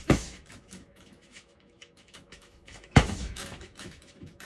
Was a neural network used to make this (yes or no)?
yes